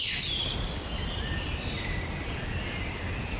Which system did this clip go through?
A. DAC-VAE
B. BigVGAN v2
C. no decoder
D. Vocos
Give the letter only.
C